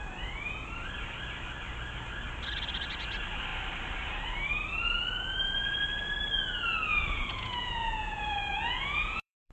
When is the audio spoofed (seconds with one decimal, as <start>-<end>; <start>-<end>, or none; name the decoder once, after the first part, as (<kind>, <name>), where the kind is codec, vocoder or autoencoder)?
6.9-9.5 (vocoder, Vocos)